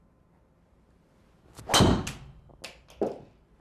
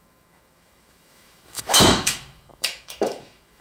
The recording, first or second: first